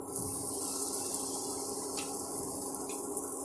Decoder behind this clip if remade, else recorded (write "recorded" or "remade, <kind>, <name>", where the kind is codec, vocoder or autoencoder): recorded